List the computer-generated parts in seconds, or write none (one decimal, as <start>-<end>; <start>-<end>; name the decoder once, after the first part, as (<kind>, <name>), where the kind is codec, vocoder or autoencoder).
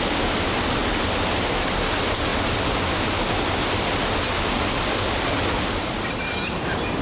none